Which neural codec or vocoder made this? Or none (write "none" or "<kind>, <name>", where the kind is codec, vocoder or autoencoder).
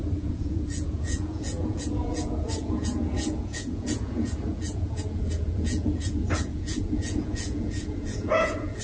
vocoder, Vocos